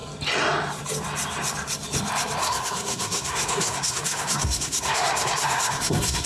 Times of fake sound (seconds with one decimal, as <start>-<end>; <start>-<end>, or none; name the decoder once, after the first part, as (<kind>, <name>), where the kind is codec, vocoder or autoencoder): 2.4-6.3 (codec, SNAC)